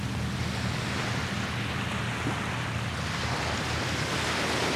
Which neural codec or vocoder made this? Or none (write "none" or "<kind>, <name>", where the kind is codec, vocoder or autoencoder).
none